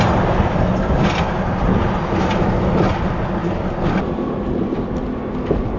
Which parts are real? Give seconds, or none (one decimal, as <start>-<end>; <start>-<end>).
0.0-5.8